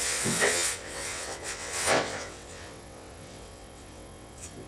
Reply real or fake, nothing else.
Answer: fake